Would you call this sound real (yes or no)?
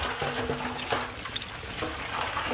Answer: yes